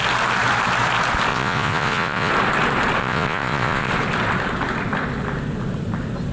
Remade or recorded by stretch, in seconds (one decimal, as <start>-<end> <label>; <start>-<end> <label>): 0.0-1.3 recorded; 1.3-2.3 remade; 2.3-3.0 recorded; 3.0-3.9 remade; 3.9-6.3 recorded